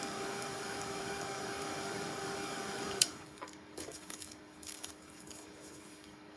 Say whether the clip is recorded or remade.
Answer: remade